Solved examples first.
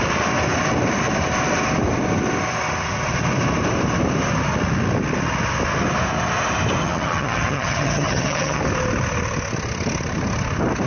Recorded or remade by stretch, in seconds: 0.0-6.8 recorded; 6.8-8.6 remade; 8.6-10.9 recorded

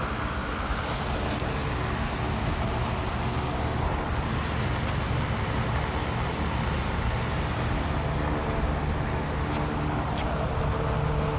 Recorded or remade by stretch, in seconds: 0.0-11.4 recorded

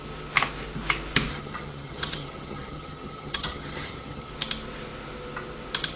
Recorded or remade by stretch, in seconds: 0.0-1.3 recorded; 1.3-4.3 remade; 4.3-6.0 recorded